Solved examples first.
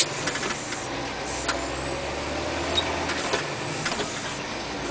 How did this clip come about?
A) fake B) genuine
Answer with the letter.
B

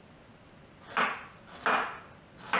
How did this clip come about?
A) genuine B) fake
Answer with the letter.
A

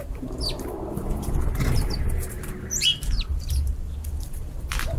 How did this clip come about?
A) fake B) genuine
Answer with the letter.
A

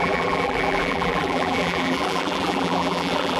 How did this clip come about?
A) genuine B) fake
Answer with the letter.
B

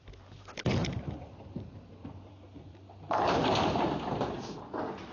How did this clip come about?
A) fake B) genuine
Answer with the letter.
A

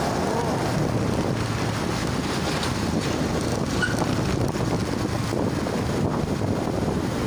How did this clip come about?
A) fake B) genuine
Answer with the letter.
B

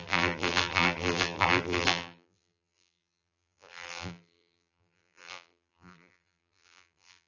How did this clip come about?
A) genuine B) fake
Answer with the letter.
B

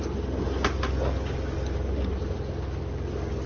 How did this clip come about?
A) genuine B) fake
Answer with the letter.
A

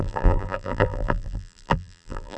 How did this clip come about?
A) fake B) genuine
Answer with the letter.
A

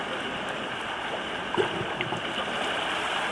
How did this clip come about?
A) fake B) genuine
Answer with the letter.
A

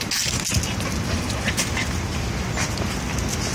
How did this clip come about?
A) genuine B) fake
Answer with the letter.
A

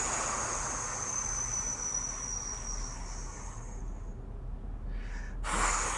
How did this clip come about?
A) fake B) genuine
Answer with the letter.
B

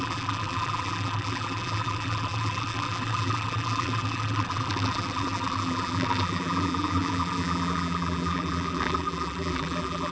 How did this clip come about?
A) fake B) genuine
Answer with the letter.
A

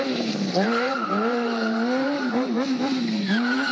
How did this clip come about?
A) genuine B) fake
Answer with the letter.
B